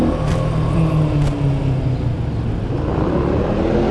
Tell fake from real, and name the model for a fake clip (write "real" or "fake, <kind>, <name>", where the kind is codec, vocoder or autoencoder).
real